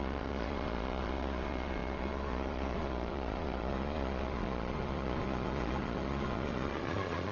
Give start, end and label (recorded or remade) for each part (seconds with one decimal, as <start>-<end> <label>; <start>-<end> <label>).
0.0-7.3 remade